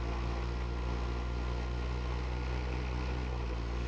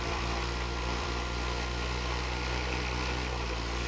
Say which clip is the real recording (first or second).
first